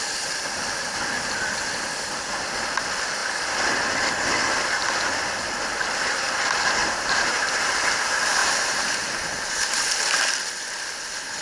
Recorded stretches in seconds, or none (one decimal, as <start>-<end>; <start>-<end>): 0.0-6.8; 7.7-8.4; 9.8-11.4